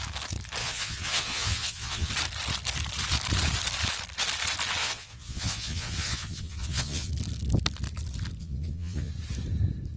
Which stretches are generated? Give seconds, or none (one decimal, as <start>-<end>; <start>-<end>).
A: 0.6-2.1; 4.8-7.1; 8.4-9.1